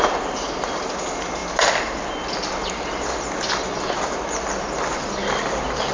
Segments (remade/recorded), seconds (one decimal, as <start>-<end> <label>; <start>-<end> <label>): 0.0-5.9 recorded